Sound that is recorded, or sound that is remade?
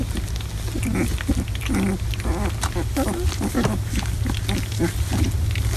recorded